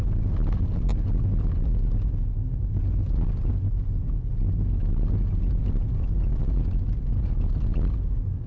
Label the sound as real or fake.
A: real